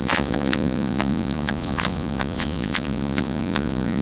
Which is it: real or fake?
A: fake